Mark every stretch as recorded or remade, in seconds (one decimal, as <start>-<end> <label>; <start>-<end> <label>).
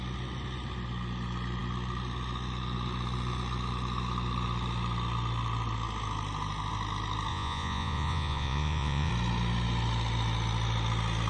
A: 0.0-7.3 recorded; 7.3-9.1 remade; 9.1-11.3 recorded